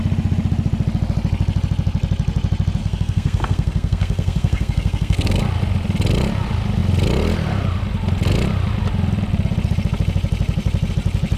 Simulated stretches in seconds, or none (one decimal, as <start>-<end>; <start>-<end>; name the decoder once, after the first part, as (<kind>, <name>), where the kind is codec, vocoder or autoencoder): 2.8-5.4 (codec, SNAC)